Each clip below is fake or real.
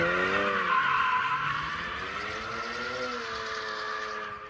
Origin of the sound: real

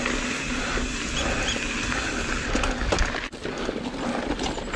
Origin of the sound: real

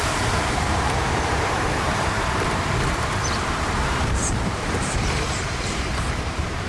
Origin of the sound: fake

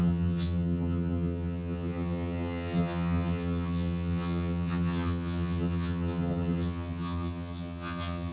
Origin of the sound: fake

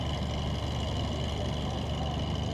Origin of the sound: real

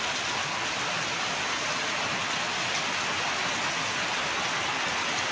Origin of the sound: real